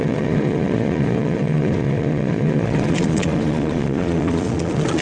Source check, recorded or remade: remade